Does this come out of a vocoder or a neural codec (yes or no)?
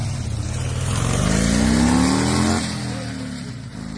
no